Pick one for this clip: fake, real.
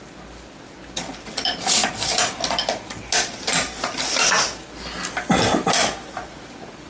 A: real